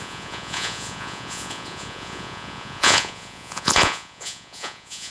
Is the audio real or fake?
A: fake